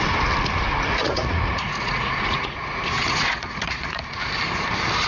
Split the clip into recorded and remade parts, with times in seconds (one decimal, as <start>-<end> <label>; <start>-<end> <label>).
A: 0.0-0.9 recorded; 0.9-4.0 remade; 4.0-5.1 recorded